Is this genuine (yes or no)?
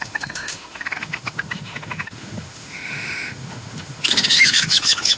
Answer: no